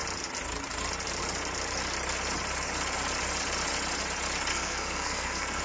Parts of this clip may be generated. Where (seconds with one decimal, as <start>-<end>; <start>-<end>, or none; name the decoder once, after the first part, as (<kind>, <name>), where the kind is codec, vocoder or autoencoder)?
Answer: 4.5-5.6 (codec, SNAC)